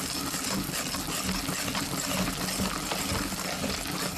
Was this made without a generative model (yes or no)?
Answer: yes